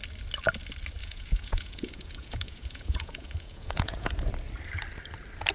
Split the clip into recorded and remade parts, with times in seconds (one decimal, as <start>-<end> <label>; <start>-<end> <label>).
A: 0.0-1.0 recorded; 1.0-4.3 remade; 4.3-5.5 recorded